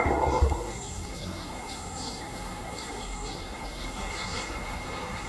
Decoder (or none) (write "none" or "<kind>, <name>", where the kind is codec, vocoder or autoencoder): codec, SNAC